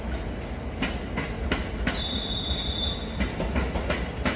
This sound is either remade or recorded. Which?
recorded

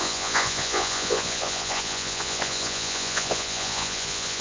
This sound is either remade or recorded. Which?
remade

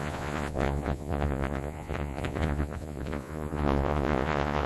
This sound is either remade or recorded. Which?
remade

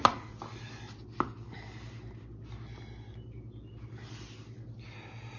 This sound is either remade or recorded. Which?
recorded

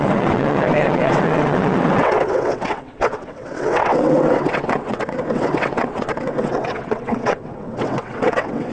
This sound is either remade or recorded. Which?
remade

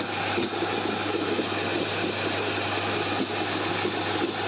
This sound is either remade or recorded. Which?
recorded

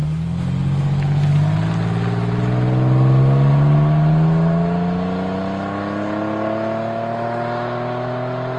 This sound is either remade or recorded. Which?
recorded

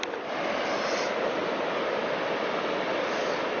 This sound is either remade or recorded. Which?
recorded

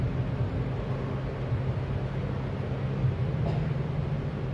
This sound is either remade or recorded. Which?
recorded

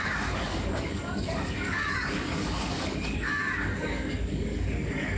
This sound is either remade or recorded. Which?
remade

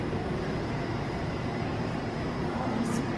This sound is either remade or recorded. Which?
remade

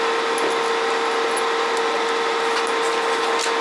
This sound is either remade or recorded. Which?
recorded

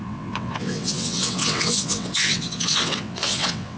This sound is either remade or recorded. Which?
remade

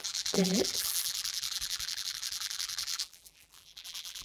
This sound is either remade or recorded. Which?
remade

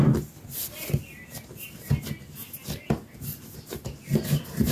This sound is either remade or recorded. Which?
recorded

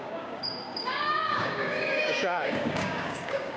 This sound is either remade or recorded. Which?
remade